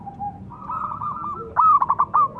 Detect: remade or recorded recorded